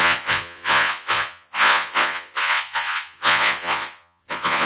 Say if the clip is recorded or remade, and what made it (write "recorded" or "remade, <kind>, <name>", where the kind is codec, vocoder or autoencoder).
remade, vocoder, Vocos